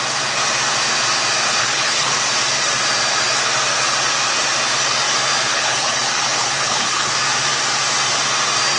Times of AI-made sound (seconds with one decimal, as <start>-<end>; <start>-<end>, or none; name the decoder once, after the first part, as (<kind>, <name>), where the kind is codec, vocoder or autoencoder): 1.6-2.2 (codec, HILCodec); 5.5-7.1